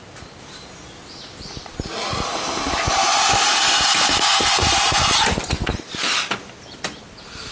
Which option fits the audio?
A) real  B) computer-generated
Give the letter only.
A